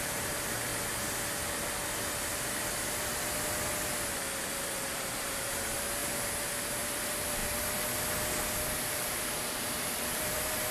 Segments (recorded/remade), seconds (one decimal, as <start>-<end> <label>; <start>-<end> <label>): 0.0-0.7 remade; 0.7-4.5 recorded; 4.5-6.0 remade; 6.0-6.7 recorded; 6.7-7.4 remade; 7.4-8.7 recorded; 8.7-10.7 remade